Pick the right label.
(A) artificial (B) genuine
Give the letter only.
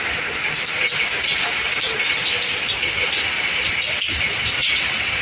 B